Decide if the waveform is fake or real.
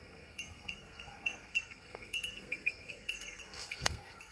fake